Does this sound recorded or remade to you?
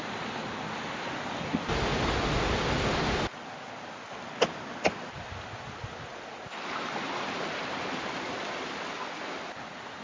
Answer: recorded